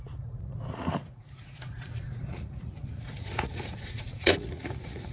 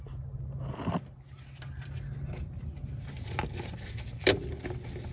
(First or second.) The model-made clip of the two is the first